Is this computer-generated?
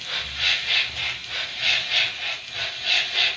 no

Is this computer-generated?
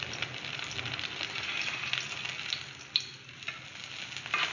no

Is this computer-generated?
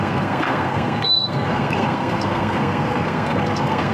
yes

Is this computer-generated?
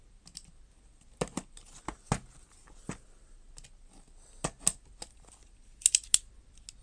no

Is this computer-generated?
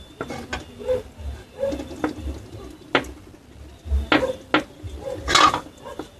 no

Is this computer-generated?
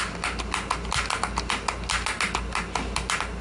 no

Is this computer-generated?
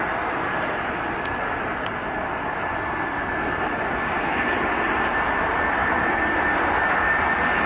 no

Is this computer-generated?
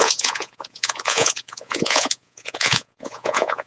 yes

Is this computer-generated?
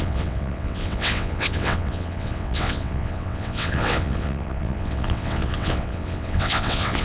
yes